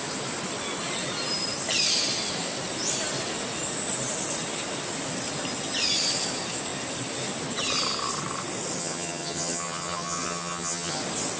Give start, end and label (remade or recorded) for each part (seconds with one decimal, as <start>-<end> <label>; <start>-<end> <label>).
0.0-8.8 recorded; 8.8-11.0 remade; 11.0-11.4 recorded